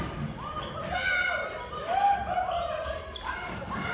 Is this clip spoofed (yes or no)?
no